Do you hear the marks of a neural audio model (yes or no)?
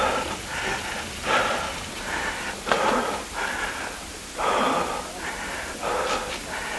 yes